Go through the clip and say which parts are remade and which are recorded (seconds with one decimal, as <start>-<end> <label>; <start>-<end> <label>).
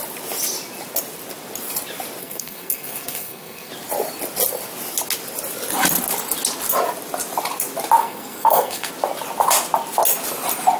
0.0-2.2 recorded; 2.2-3.7 remade; 3.7-8.0 recorded; 8.0-8.9 remade; 8.9-10.8 recorded